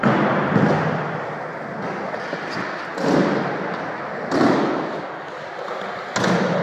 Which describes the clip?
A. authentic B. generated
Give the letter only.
A